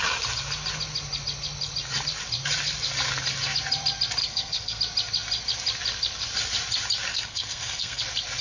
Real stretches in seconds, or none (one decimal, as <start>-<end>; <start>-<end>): 0.0-4.2; 4.8-7.1; 8.0-8.4